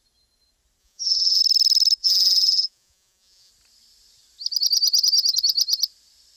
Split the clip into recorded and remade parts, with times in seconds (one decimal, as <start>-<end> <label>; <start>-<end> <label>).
0.0-0.8 recorded; 0.8-1.4 remade; 1.4-2.0 recorded; 2.0-3.5 remade; 3.5-6.4 recorded